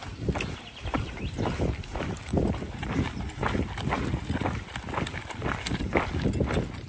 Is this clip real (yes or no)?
yes